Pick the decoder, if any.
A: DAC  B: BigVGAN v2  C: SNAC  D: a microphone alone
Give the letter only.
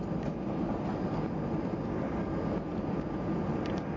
D